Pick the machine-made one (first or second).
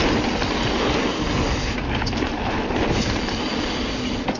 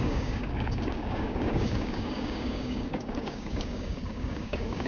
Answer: second